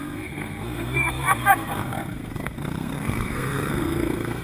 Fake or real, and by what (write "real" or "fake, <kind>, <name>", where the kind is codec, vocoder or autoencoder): fake, codec, SNAC